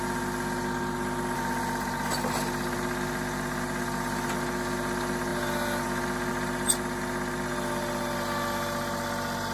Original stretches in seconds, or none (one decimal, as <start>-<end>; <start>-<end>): 0.0-9.5